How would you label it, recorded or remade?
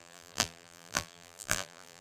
remade